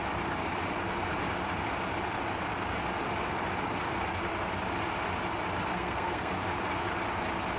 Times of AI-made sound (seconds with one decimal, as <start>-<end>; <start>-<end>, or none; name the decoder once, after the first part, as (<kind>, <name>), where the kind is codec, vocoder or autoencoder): 5.7-6.3 (codec, SNAC)